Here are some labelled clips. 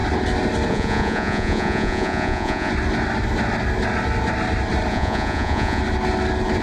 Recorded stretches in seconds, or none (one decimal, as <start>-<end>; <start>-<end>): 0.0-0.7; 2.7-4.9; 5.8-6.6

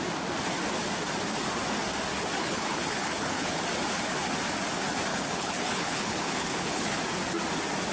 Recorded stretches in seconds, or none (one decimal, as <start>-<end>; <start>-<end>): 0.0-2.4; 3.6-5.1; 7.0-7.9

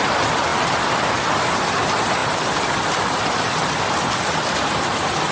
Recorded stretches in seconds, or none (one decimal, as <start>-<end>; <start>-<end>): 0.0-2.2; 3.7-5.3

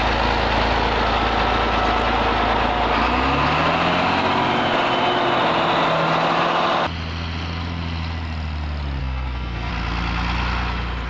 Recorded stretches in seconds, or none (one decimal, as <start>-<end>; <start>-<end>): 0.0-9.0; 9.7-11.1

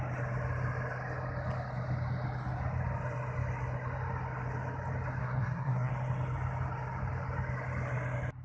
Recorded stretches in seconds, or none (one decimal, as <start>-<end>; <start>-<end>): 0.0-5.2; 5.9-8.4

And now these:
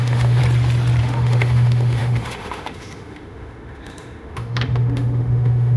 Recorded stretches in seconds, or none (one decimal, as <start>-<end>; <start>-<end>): 0.4-1.0

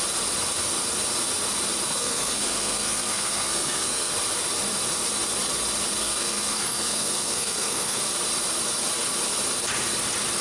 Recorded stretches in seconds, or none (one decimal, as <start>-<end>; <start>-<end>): 0.0-1.9; 4.1-6.0; 8.0-10.4